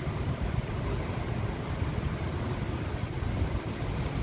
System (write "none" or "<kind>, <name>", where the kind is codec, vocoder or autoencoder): none